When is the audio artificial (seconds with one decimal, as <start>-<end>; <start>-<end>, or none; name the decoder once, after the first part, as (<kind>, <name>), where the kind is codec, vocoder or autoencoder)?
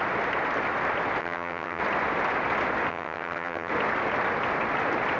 1.2-1.8 (vocoder, HiFi-GAN); 2.9-3.7